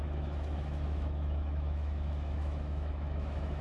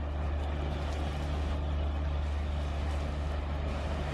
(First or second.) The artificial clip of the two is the first